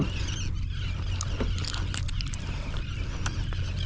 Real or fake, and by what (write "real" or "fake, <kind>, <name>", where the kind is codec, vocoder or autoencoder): real